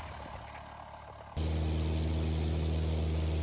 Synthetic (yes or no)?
no